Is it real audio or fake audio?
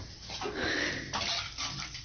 real